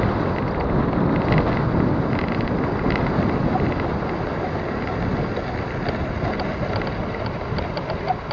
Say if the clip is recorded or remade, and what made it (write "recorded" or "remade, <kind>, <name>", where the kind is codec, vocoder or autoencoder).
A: recorded